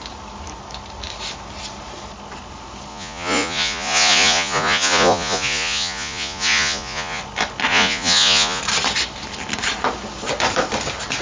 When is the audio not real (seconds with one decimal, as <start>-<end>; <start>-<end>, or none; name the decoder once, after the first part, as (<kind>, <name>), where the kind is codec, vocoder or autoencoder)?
2.9-7.2 (vocoder, Vocos); 7.7-8.6